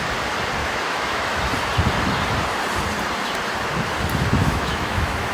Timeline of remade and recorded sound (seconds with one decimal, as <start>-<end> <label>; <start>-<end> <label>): 0.0-0.6 recorded; 0.6-1.4 remade; 1.4-4.4 recorded; 4.4-5.3 remade